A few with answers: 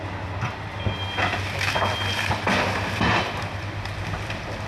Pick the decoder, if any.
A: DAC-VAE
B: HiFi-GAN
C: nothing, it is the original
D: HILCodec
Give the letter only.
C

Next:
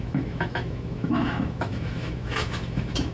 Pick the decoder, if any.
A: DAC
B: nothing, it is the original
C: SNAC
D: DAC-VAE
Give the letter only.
D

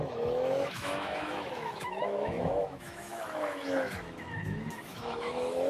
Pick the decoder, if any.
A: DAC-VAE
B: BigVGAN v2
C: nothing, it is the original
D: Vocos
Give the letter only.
A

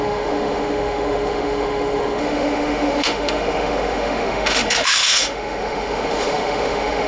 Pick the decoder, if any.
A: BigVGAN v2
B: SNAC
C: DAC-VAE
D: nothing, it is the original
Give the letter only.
C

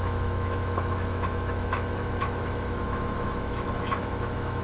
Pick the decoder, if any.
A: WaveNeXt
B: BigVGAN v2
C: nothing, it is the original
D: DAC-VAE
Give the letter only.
D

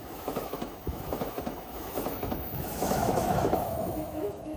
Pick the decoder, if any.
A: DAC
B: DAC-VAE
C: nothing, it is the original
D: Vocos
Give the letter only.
B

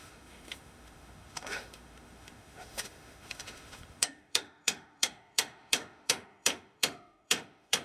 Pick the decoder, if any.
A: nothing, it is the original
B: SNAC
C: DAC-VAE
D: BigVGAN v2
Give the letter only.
C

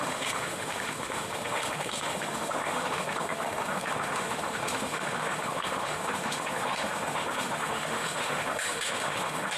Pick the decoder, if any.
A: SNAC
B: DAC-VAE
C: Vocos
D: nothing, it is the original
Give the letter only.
B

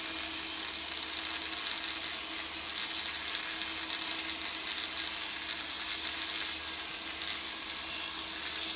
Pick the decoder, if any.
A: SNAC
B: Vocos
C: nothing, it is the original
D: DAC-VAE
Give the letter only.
C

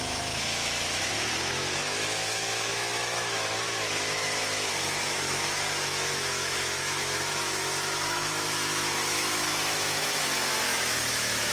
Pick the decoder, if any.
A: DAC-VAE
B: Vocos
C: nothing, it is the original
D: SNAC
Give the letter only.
A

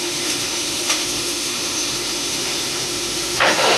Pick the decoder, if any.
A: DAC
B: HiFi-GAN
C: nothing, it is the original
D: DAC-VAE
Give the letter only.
D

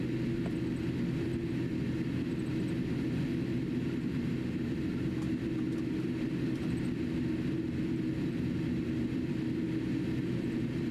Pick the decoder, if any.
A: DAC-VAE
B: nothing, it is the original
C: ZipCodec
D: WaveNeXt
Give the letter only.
B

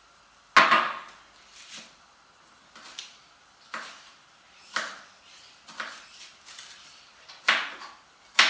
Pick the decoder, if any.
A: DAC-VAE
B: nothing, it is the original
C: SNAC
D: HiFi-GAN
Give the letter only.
B